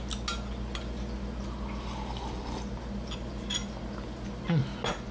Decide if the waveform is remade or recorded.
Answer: recorded